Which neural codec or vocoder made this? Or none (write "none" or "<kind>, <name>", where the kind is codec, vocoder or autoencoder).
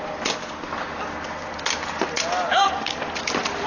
none